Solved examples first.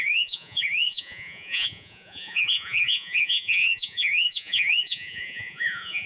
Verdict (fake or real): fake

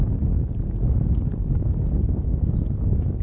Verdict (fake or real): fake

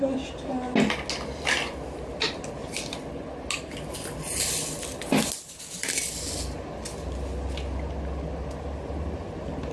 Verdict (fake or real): real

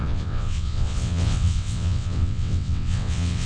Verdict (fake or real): fake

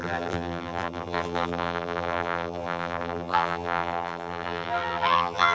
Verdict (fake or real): fake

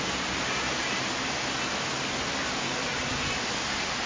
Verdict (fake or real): real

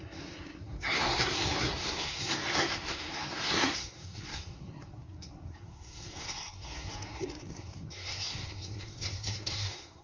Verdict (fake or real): fake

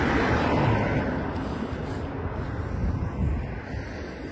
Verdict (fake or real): real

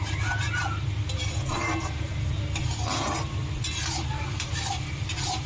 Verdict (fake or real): real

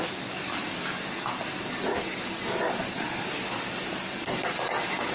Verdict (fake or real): fake